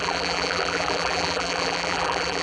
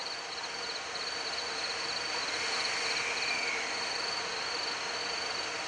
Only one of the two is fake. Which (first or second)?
first